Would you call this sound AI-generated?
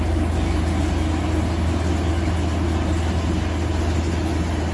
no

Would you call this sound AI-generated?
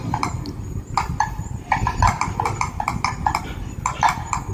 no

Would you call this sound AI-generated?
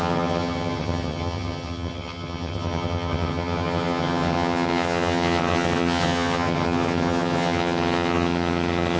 yes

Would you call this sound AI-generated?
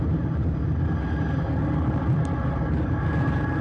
yes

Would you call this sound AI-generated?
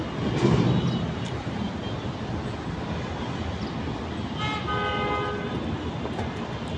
no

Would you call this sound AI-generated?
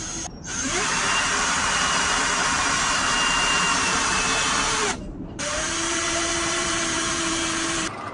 yes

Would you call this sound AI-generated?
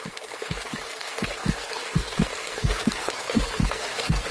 yes